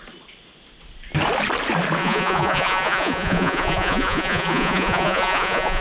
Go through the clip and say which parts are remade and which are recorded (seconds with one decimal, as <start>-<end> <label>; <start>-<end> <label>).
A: 0.0-2.0 recorded; 2.0-5.8 remade